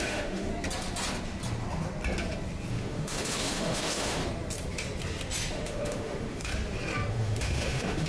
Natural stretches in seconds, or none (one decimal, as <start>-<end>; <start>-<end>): 0.5-2.7; 4.2-5.5; 6.5-7.1